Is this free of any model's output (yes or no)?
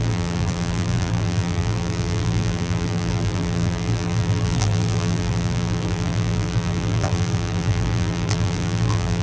no